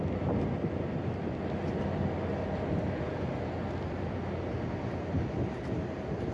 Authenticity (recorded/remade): recorded